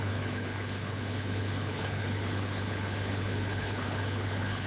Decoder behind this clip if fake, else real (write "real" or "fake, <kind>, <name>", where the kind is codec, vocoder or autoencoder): fake, codec, HILCodec